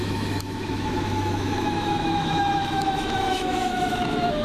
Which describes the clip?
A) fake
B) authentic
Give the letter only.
A